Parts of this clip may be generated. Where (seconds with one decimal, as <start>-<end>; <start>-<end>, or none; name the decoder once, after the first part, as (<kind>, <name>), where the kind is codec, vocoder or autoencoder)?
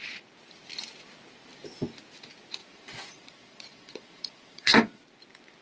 2.6-5.0 (vocoder, Vocos)